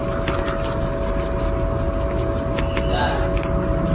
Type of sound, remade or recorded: recorded